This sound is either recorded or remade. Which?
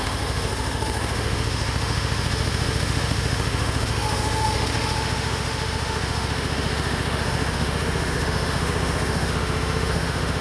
remade